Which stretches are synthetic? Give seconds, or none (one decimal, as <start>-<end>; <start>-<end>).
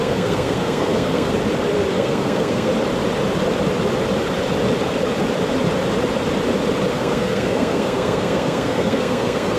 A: 0.0-1.4; 1.9-2.7; 6.9-9.6